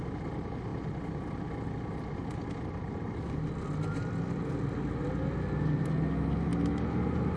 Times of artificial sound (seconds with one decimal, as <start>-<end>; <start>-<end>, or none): none